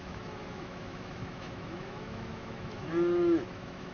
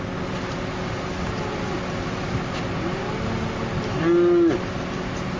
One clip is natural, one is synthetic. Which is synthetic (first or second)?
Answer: first